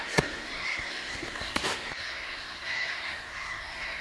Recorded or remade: remade